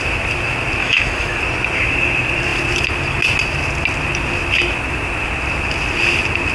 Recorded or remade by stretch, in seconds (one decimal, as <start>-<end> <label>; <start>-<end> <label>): 0.0-0.8 recorded; 0.8-1.4 remade; 1.4-6.5 recorded